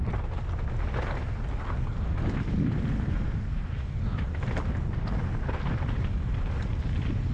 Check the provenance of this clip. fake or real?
real